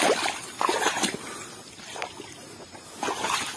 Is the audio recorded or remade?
recorded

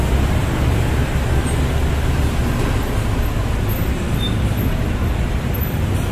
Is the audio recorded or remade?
recorded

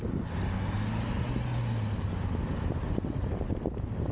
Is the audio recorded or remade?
recorded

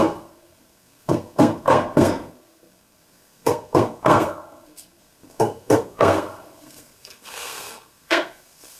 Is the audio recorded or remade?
remade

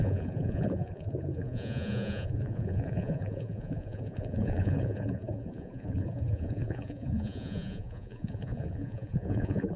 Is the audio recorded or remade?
remade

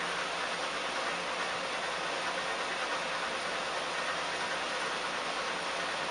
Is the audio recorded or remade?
recorded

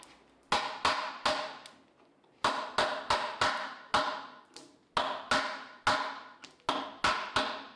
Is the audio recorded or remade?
recorded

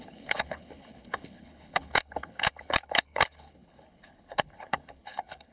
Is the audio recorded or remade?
remade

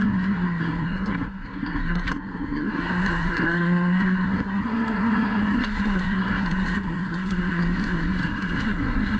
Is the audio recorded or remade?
remade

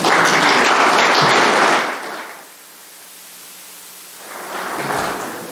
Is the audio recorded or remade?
recorded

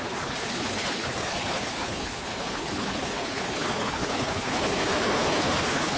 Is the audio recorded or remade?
remade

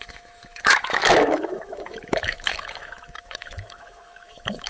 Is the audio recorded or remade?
remade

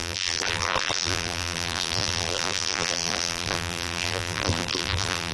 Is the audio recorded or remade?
remade